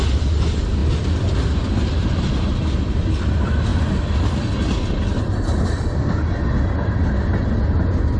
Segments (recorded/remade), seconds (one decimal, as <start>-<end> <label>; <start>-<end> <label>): 0.0-8.2 recorded

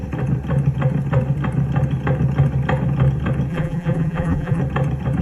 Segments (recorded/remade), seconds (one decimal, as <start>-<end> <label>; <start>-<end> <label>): 0.0-3.5 recorded; 3.5-4.6 remade; 4.6-5.2 recorded

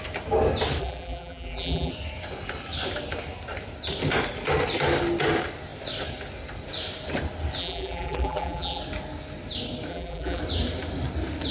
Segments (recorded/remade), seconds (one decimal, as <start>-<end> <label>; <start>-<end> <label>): 0.0-0.8 recorded; 0.8-1.9 remade; 1.9-7.6 recorded; 7.6-8.8 remade; 8.8-9.9 recorded; 9.9-10.4 remade; 10.4-11.5 recorded

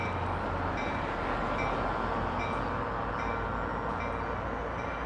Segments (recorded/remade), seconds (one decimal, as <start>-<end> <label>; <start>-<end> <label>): 0.0-5.1 recorded

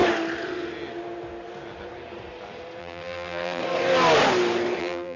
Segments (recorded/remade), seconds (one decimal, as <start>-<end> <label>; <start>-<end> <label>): 0.0-2.8 recorded; 2.8-3.6 remade; 3.6-4.8 recorded; 4.8-5.2 remade

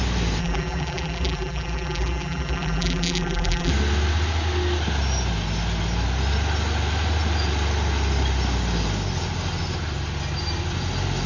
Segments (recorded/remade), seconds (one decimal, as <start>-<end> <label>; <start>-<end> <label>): 0.0-0.4 recorded; 0.4-3.7 remade; 3.7-11.3 recorded

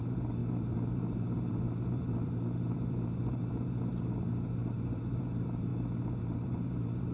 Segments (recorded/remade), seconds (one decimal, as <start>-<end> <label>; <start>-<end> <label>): 0.0-5.7 remade; 5.7-6.2 recorded; 6.2-7.1 remade

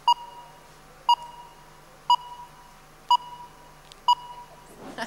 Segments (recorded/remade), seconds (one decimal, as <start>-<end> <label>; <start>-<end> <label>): 0.0-5.1 recorded